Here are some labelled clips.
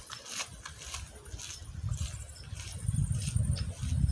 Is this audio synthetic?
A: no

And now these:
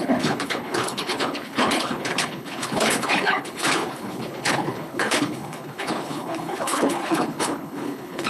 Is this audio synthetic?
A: yes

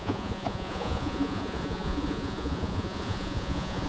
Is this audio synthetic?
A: yes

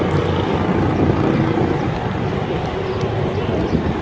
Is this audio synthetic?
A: no